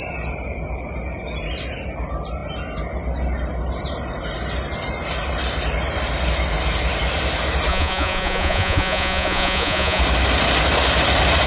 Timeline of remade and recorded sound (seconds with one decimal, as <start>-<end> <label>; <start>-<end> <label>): 0.0-7.7 recorded; 7.7-10.0 remade; 10.0-11.5 recorded